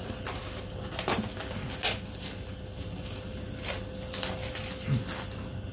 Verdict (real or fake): real